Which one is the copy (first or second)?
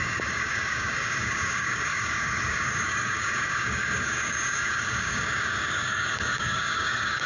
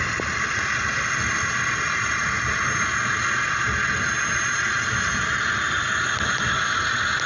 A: first